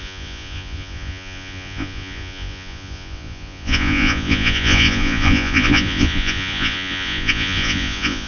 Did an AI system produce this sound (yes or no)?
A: yes